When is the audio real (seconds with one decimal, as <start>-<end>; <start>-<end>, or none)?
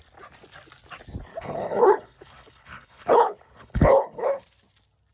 0.0-1.3; 4.4-5.1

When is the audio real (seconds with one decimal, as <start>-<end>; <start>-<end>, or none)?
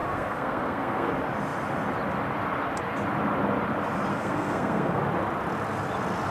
1.1-4.1; 5.0-6.3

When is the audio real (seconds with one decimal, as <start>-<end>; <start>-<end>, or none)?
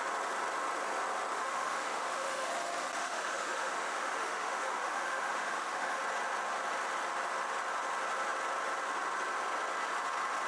0.0-1.3; 2.5-3.0; 6.0-10.5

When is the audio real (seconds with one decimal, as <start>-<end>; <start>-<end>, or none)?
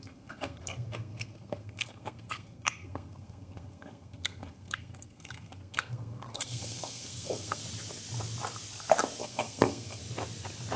7.6-9.2; 10.0-10.8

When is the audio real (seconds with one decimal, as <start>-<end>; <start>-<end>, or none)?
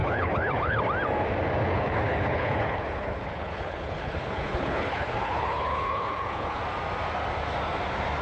0.8-1.7; 6.6-8.2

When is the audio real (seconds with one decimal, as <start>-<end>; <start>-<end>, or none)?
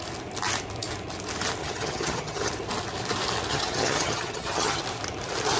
0.0-1.6; 2.5-3.5; 4.8-5.6